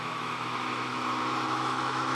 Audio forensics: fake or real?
fake